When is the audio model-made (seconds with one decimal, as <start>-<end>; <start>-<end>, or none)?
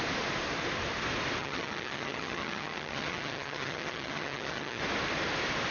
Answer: 1.4-4.8